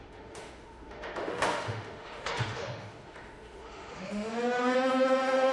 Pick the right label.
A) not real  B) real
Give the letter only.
A